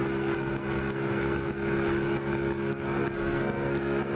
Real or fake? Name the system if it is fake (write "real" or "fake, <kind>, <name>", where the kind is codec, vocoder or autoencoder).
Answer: fake, codec, SNAC